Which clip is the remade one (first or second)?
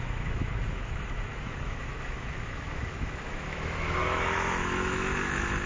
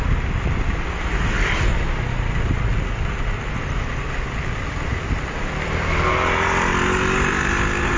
first